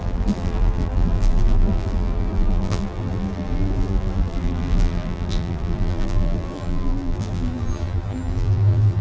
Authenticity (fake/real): fake